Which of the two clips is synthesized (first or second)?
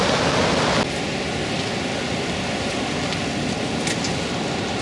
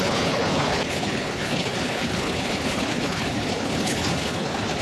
second